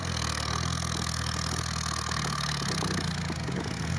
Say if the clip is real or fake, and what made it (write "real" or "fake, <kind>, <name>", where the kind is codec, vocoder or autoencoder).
real